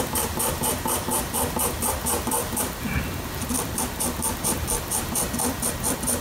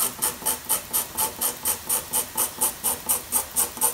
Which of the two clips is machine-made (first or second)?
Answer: first